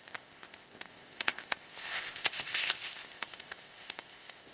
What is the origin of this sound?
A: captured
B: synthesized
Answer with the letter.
B